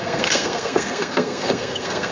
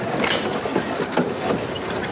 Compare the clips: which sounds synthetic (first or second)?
first